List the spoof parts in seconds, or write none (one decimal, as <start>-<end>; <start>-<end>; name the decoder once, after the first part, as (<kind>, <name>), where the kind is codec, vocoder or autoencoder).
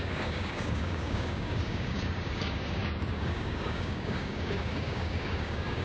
0.0-5.8 (codec, DAC)